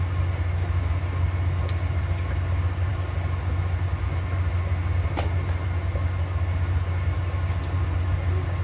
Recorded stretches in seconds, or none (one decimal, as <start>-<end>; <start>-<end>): 0.0-8.6